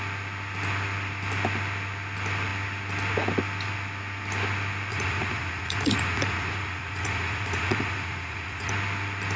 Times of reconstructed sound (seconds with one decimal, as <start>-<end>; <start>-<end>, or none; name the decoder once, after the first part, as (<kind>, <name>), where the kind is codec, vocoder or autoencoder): 4.9-8.7 (vocoder, Vocos)